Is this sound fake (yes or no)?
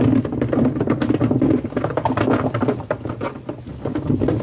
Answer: no